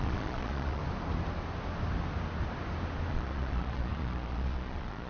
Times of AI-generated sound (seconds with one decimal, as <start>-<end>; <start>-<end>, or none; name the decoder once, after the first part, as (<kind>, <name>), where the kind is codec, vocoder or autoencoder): 0.0-0.8 (vocoder, Vocos); 3.1-5.1